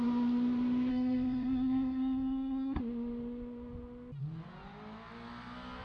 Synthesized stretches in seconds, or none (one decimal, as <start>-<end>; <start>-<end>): 0.9-2.8